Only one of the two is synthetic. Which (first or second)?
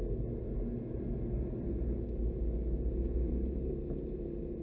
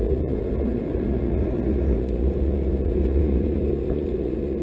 second